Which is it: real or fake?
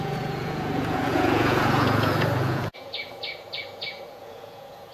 fake